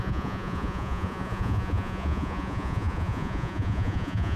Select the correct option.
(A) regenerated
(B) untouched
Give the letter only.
A